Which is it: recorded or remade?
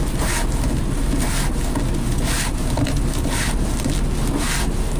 recorded